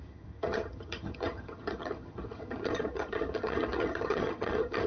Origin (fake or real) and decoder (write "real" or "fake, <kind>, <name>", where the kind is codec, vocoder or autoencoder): fake, vocoder, HiFi-GAN